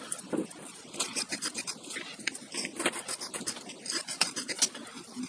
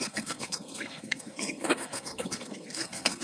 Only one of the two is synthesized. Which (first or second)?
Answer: second